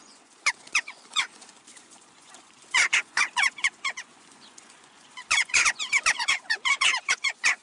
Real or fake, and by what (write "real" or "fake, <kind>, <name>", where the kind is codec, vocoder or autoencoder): fake, vocoder, Vocos